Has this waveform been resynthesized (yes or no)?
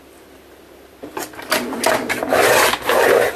no